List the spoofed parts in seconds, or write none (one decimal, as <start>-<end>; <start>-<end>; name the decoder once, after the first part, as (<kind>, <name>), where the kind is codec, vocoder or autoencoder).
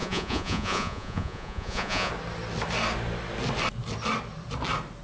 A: 0.0-2.1 (vocoder, Vocos)